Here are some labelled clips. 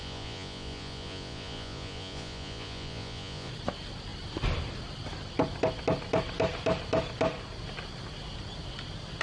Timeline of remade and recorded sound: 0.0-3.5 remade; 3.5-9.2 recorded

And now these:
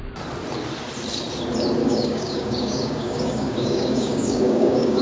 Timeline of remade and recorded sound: 0.0-1.8 recorded; 1.8-5.0 remade

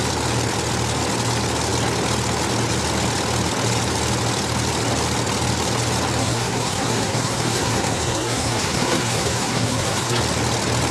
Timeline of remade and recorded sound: 0.0-6.2 recorded; 6.2-10.2 remade; 10.2-10.9 recorded